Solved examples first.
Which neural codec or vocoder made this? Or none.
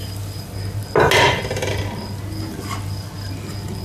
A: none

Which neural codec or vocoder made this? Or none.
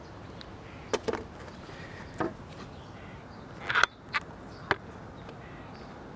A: none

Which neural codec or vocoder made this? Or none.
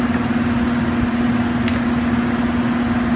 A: none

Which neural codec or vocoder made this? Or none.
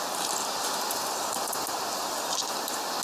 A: none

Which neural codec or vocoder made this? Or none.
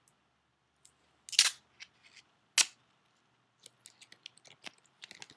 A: none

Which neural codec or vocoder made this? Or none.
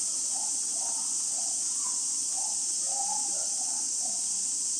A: none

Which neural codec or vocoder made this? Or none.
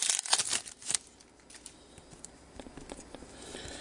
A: none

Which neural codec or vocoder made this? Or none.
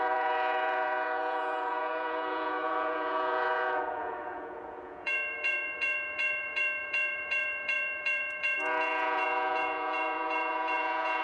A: vocoder, Vocos